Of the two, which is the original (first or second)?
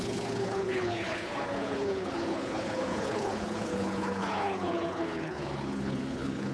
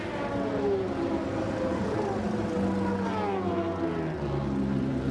second